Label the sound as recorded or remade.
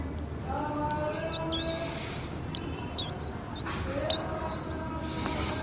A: recorded